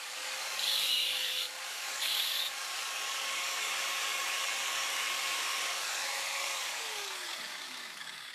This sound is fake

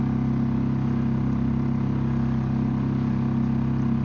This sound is real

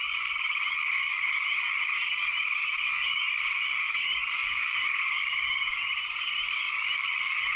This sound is fake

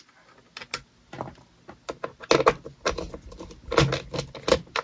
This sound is real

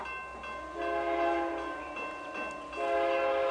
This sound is real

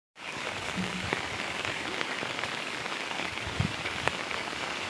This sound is fake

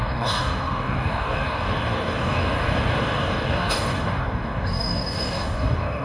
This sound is fake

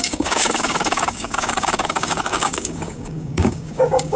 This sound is fake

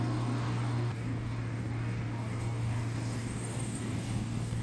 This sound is fake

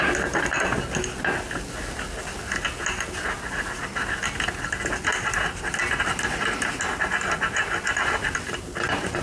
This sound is real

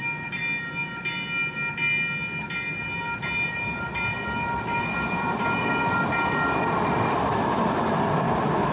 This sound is real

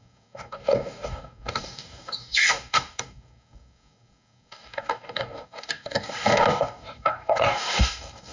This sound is fake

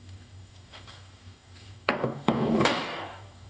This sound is fake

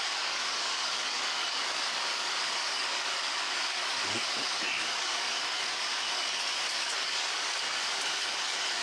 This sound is fake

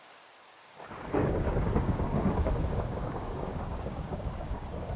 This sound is fake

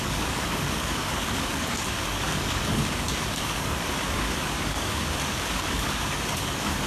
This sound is fake